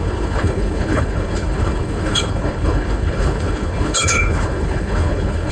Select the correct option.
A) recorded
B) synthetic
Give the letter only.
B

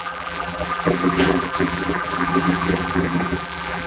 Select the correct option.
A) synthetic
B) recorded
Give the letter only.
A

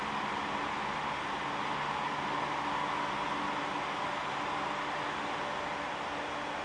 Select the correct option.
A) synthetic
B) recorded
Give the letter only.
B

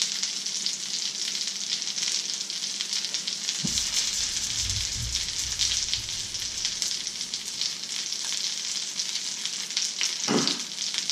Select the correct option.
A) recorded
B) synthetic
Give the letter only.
A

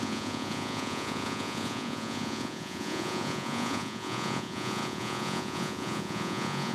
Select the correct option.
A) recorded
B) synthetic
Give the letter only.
B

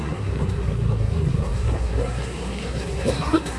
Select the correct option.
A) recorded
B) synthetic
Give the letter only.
B